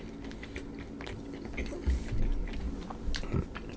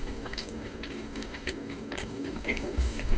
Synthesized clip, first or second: second